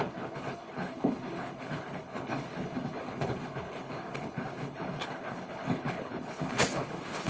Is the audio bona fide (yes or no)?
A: no